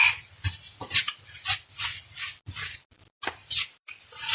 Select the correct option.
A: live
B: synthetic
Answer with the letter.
A